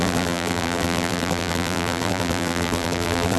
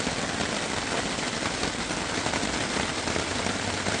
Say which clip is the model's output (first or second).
first